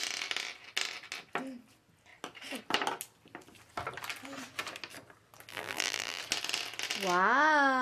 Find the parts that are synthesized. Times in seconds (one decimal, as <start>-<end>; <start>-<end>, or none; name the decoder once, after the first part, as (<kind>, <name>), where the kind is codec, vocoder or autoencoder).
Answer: 5.5-6.2 (vocoder, BigVGAN v2)